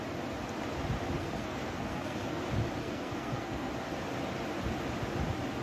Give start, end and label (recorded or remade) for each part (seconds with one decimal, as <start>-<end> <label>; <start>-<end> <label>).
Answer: 0.0-1.2 recorded; 1.2-2.4 remade; 2.4-2.8 recorded; 2.8-3.7 remade; 3.7-5.6 recorded